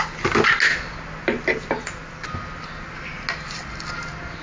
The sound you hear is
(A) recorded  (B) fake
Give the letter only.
A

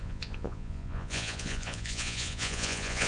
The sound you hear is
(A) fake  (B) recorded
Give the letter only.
A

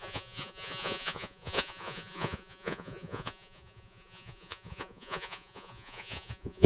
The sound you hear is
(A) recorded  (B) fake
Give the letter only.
B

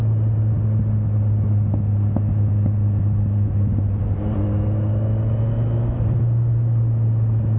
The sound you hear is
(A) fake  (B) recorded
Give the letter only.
B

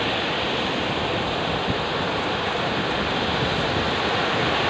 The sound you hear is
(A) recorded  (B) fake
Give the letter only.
A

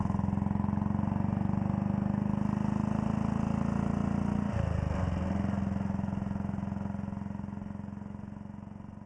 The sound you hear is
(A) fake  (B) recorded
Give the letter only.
B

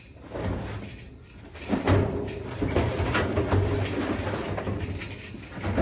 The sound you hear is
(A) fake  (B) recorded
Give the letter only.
B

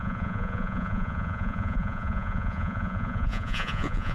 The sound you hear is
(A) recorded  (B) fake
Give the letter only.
B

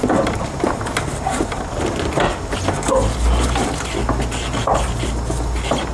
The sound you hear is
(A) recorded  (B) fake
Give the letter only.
A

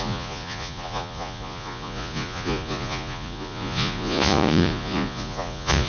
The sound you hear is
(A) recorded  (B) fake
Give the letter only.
B